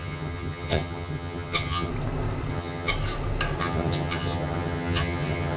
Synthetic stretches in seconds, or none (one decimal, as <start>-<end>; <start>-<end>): 0.0-1.9; 2.5-2.9; 3.6-5.6